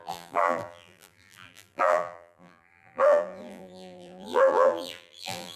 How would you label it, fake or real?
fake